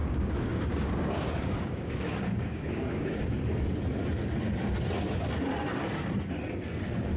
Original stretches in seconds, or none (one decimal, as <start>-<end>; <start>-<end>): 3.2-7.2